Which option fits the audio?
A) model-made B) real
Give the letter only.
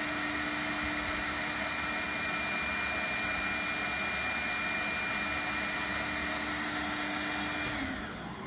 B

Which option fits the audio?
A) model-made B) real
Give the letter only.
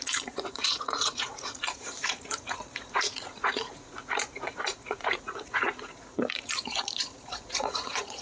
A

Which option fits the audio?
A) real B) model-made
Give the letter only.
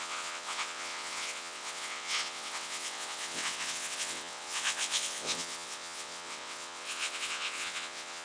B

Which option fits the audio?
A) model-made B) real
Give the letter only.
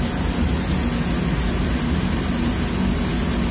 B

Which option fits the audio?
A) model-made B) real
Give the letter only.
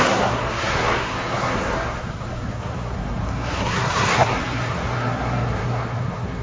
A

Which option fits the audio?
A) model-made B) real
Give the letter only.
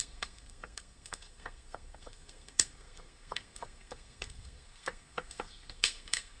A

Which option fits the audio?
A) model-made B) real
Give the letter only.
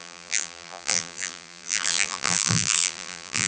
A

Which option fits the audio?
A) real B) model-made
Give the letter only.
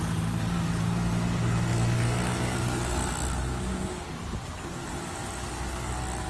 A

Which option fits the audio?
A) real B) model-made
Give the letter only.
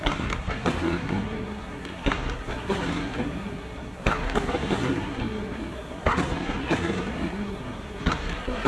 B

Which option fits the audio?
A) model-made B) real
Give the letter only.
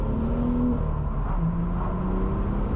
B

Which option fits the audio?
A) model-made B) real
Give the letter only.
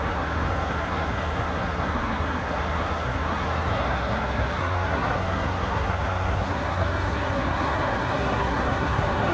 A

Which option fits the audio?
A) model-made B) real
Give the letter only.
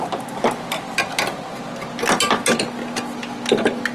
B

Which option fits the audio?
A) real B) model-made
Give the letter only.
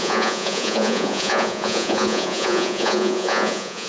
B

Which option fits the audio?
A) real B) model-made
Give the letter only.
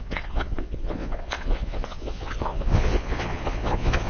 B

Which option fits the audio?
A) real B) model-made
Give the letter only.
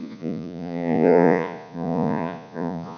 B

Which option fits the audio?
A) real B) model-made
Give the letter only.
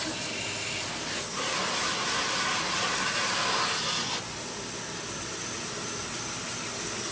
A